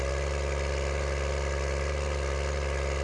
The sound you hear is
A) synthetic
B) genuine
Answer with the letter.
B